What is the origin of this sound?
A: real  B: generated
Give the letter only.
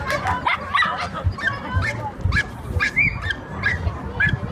A